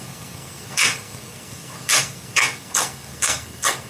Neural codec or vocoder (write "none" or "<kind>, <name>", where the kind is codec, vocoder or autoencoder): codec, SNAC